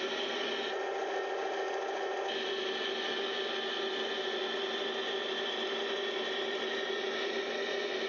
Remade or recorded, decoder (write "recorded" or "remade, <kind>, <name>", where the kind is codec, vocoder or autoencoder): recorded